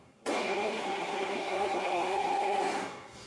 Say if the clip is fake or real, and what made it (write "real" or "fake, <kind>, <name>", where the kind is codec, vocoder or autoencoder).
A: fake, codec, SNAC